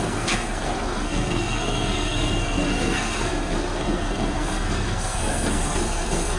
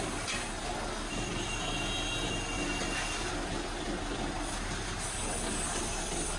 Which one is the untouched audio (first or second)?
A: second